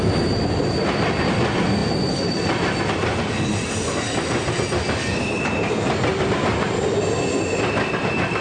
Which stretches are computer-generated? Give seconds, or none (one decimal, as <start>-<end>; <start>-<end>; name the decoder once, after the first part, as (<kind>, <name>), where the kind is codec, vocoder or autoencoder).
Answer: none